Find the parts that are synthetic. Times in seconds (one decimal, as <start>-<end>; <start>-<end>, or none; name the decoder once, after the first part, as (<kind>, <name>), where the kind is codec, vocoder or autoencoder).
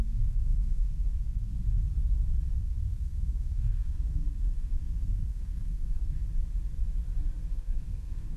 0.0-1.5 (codec, SNAC); 2.5-6.2; 7.5-8.4